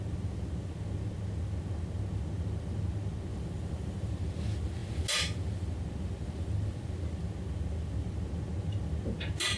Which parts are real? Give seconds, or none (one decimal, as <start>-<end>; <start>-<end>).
0.0-3.3; 4.1-9.6